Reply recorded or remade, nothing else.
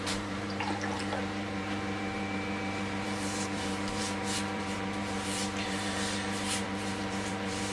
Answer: remade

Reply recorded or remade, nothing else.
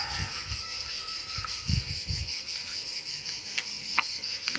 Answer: remade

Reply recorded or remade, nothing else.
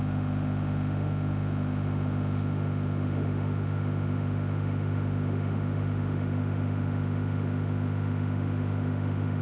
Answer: remade